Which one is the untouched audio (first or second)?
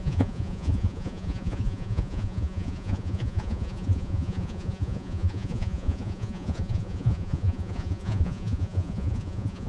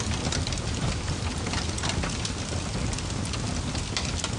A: second